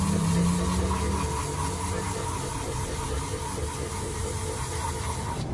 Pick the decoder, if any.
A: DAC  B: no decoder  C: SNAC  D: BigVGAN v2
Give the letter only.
B